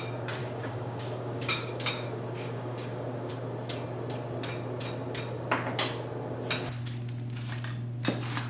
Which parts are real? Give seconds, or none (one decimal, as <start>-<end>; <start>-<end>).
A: 0.0-0.4; 3.3-8.5